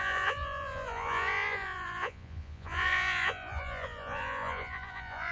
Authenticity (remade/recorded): remade